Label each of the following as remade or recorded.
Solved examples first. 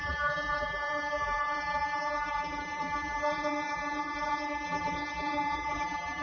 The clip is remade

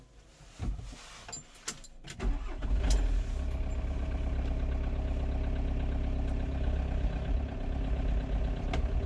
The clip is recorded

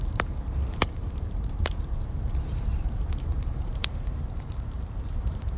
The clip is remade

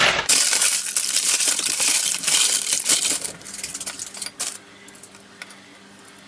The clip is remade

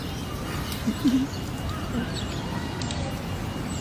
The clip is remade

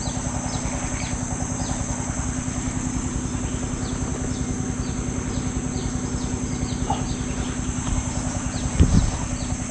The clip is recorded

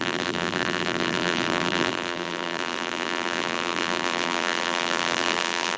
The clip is remade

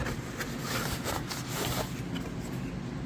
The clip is recorded